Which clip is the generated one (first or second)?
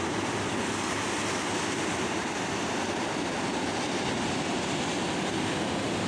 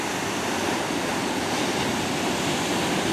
second